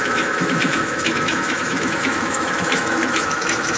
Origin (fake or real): fake